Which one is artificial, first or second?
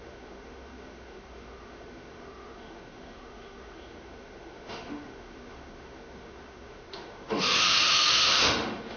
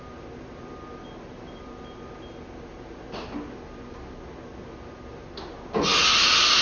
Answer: first